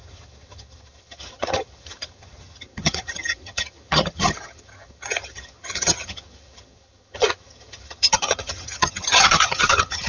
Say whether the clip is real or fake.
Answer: fake